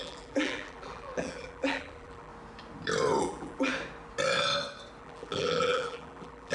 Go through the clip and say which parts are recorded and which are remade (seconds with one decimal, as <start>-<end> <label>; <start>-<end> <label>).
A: 0.0-2.3 remade; 2.3-3.2 recorded; 3.2-3.7 remade; 3.7-5.0 recorded; 5.0-6.5 remade